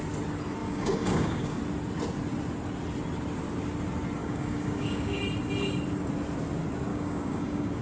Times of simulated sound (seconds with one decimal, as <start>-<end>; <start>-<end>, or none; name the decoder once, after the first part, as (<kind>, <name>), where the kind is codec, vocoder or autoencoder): 0.6-1.6 (codec, DAC); 4.2-5.2; 6.9-7.8